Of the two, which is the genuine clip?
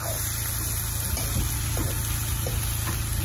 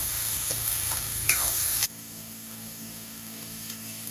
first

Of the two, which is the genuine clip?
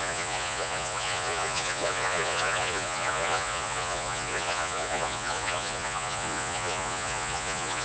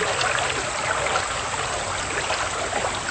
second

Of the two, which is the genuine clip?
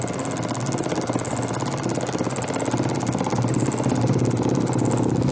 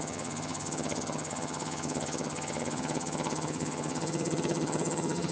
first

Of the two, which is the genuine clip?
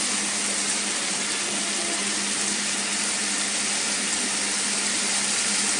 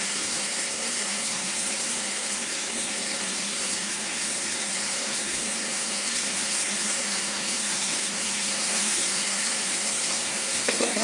first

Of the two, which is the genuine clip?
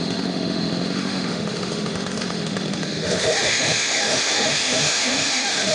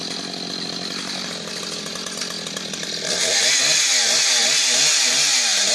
second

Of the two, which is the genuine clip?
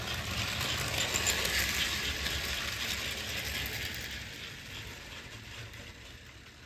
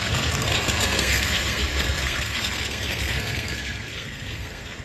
first